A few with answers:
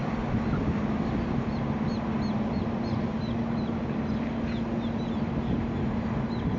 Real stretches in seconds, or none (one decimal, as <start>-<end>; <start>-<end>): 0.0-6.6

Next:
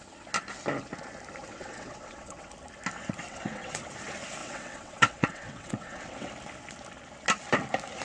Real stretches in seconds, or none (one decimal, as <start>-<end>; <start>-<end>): 0.0-1.5; 2.5-3.3; 3.8-4.4; 6.3-8.0

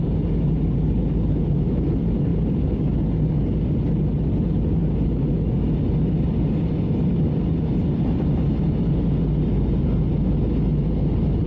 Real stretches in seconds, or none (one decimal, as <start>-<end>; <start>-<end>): 0.0-11.5